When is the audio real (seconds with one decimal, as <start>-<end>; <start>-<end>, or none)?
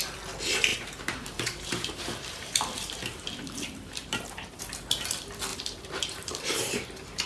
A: 0.0-0.7; 4.6-5.5; 6.6-7.3